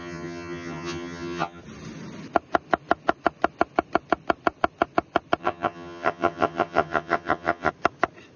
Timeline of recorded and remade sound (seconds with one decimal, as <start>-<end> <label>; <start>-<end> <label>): 0.0-1.6 remade; 1.6-5.4 recorded; 5.4-7.7 remade; 7.7-8.4 recorded